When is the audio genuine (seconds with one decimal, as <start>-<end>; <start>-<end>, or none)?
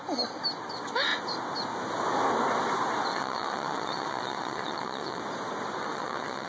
0.0-3.1; 5.2-5.8